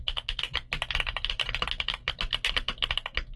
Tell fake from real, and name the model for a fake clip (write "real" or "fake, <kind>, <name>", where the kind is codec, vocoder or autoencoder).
real